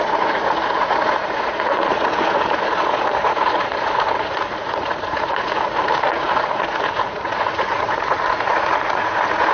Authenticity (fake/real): fake